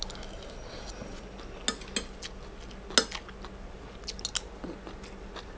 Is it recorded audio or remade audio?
recorded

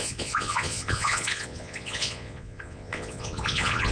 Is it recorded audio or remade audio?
remade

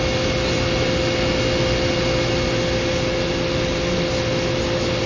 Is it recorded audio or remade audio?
recorded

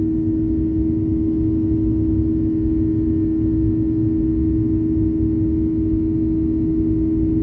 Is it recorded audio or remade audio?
recorded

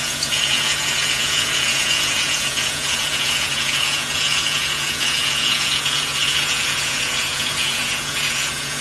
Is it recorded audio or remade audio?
remade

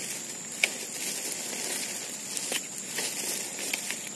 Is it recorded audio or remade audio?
recorded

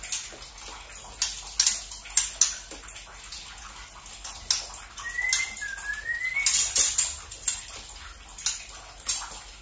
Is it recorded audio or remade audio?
recorded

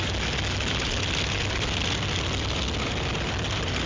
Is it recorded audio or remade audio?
recorded